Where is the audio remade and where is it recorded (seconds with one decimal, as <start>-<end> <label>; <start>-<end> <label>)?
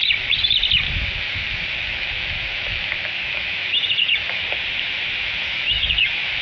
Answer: 0.0-1.0 recorded; 1.0-4.4 remade; 4.4-5.2 recorded; 5.2-6.4 remade